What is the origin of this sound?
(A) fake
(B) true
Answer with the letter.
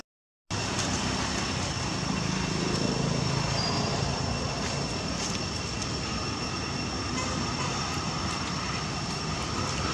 B